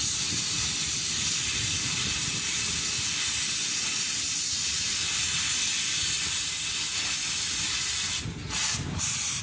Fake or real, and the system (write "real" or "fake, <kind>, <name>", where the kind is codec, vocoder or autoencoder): real